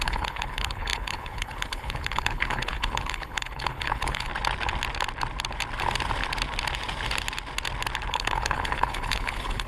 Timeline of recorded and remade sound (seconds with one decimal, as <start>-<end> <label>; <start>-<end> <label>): 0.0-4.3 remade; 4.3-8.1 recorded; 8.1-9.7 remade